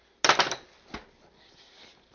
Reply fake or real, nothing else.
real